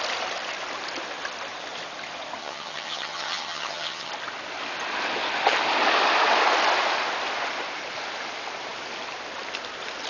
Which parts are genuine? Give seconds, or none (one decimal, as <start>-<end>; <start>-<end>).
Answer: 0.0-2.4; 4.1-10.1

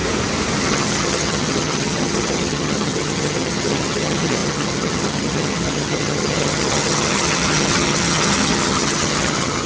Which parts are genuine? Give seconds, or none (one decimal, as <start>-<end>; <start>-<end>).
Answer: 0.0-0.6

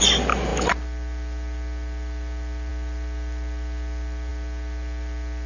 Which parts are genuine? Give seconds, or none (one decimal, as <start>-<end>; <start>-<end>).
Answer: 0.0-5.5

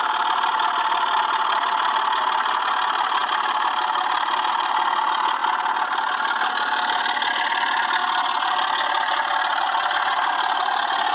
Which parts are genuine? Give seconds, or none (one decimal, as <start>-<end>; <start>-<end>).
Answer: 0.0-11.1

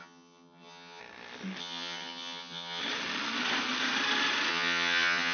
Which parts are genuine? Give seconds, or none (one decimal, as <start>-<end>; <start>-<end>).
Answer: 1.0-1.6; 2.8-4.5

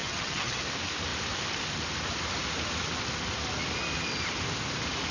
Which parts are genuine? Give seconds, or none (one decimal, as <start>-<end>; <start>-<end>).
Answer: 0.6-5.1

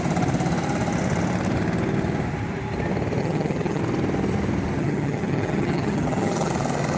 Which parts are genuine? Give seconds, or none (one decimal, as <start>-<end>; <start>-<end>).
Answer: 0.0-3.2; 3.8-4.8; 6.5-7.0

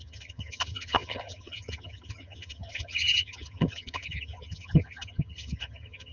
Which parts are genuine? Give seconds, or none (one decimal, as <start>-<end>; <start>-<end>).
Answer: none